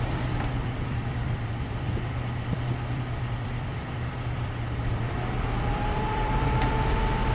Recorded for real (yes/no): no